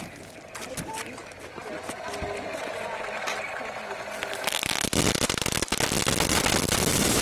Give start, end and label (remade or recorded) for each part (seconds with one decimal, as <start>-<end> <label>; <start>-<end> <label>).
0.0-7.2 recorded